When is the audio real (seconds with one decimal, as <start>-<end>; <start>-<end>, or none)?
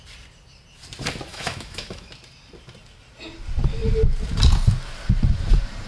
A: 0.0-1.3; 2.1-5.9